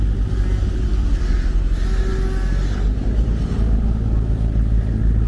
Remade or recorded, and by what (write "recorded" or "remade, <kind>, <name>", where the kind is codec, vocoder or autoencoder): recorded